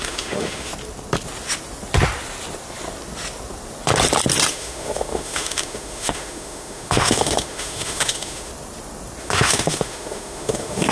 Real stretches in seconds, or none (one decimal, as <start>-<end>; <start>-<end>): 0.7-4.5; 8.5-9.2

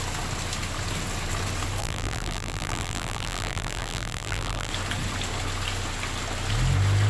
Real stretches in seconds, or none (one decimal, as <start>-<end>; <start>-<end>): 0.0-1.8; 4.7-7.1

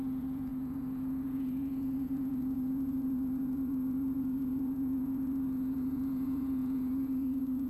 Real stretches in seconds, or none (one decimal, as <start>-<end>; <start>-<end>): none

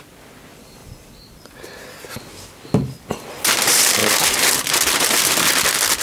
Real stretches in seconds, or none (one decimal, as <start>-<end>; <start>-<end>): 0.0-4.0; 4.6-6.0

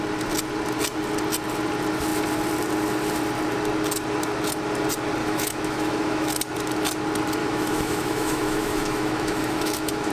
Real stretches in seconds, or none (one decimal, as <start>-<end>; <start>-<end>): 0.0-5.2; 6.3-7.4

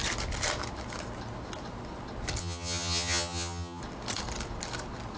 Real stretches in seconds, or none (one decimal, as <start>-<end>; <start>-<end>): 0.0-2.4; 3.8-5.2

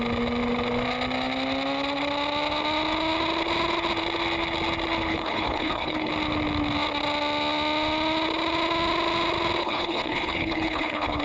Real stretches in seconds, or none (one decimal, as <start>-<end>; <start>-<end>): 0.0-5.1; 6.1-9.6

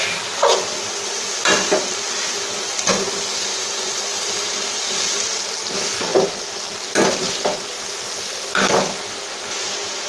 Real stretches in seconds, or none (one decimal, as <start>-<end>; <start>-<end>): 0.0-3.5; 4.0-10.1